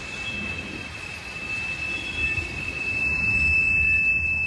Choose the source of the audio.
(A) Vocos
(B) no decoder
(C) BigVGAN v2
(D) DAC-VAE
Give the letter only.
B